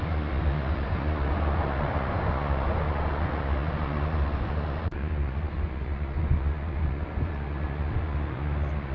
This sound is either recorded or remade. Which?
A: remade